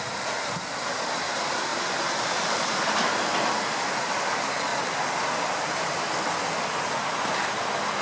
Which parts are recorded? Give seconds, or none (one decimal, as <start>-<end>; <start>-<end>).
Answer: 0.0-1.7; 3.1-8.0